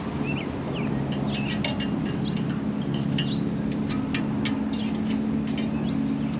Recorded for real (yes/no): yes